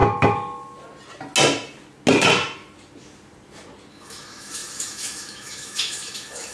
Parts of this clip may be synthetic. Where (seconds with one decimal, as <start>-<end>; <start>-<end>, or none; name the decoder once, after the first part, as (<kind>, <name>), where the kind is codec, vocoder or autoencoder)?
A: 3.9-6.5 (autoencoder, DAC-VAE)